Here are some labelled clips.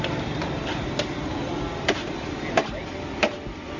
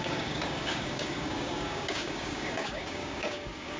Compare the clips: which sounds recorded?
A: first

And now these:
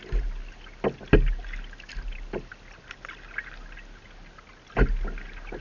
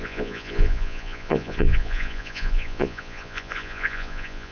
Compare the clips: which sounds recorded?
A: first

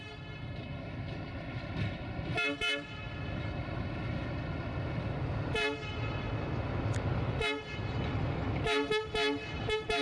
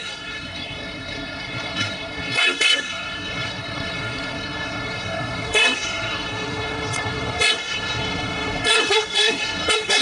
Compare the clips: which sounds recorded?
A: first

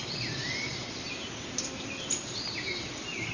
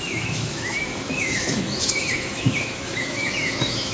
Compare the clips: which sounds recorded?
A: first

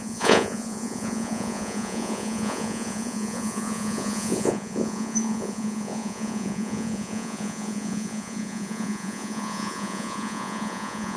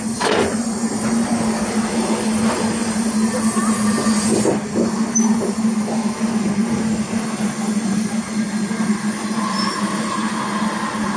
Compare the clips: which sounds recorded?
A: second